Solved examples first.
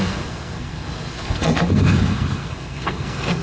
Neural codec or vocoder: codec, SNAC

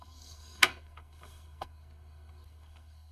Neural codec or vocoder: codec, SNAC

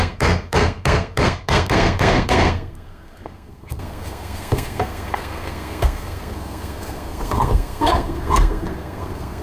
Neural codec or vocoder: codec, SNAC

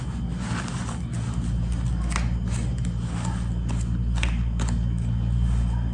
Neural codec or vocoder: none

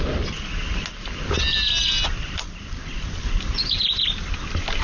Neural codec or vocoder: none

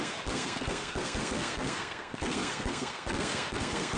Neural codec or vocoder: codec, SNAC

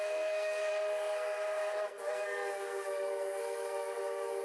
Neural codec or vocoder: codec, SNAC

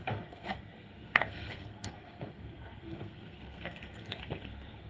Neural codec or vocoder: codec, SNAC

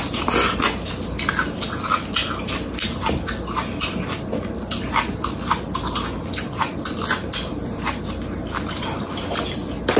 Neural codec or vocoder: none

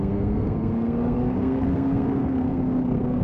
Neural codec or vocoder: codec, SNAC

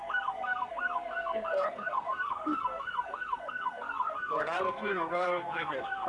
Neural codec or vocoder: codec, SNAC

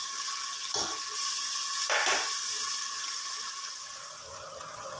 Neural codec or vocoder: none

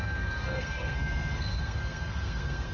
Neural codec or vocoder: codec, SNAC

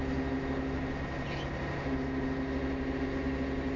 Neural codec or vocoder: none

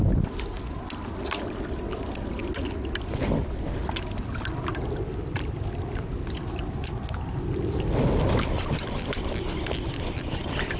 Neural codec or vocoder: none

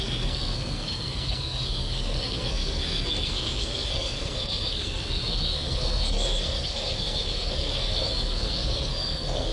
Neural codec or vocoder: codec, SNAC